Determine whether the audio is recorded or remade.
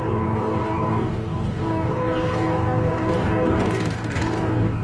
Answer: remade